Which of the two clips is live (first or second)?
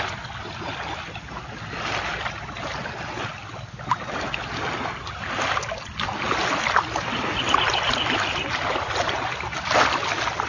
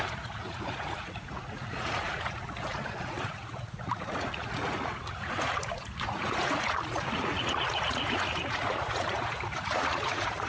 first